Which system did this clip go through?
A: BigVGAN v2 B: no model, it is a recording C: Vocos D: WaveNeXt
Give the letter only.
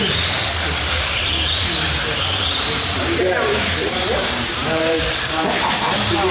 A